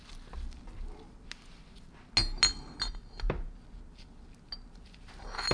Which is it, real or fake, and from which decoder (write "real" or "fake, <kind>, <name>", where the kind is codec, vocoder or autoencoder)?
real